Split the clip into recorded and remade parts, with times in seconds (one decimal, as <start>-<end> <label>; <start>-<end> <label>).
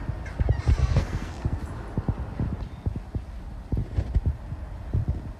0.0-0.8 recorded; 0.8-1.6 remade; 1.6-5.4 recorded